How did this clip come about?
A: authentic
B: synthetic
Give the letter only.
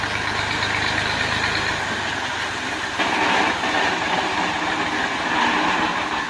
A